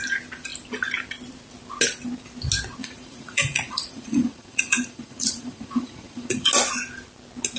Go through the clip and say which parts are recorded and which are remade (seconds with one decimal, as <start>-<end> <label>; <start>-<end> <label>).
0.0-2.8 recorded; 2.8-6.5 remade; 6.5-7.6 recorded